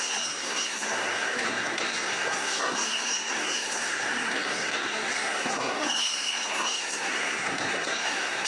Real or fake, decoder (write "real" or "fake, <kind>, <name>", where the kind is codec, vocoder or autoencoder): fake, codec, SNAC